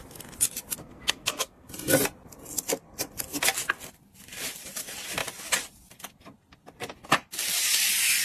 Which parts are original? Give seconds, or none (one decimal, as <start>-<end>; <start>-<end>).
0.0-0.8; 1.7-8.2